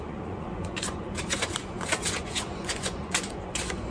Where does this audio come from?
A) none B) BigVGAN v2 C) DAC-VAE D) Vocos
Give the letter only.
D